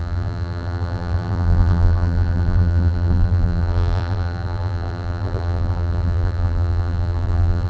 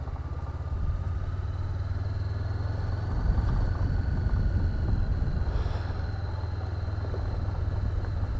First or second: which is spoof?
first